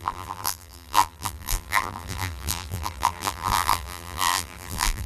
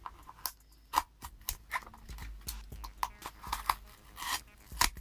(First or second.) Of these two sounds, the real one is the second